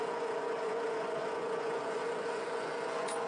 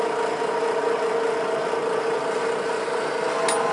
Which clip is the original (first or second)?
second